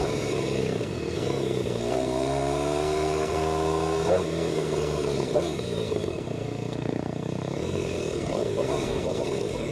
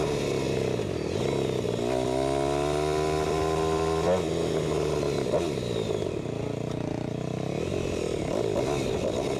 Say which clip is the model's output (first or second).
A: first